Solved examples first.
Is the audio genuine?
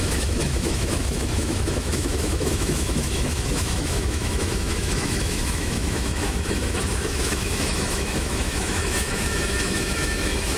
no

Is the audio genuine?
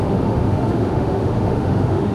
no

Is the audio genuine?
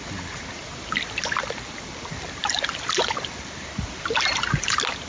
yes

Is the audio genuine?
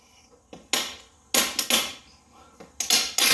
yes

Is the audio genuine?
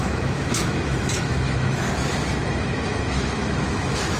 no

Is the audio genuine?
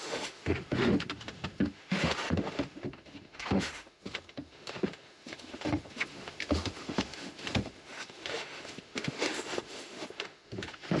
no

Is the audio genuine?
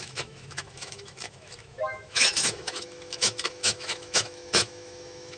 no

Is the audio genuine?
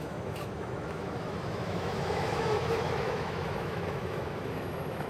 no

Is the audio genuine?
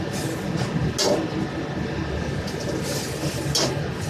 yes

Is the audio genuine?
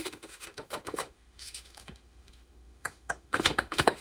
no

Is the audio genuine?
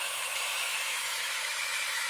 no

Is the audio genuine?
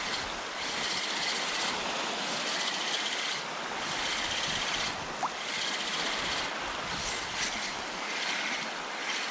yes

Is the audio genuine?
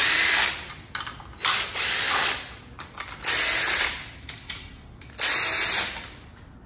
yes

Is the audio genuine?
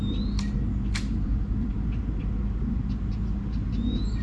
yes